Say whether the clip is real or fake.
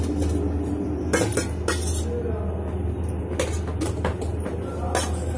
real